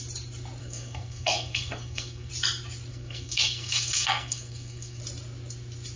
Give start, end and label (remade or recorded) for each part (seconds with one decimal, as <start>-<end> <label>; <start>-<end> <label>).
0.0-0.6 recorded; 0.6-2.3 remade; 2.3-2.9 recorded; 2.9-5.0 remade; 5.0-6.0 recorded